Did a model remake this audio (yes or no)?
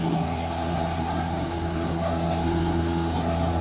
yes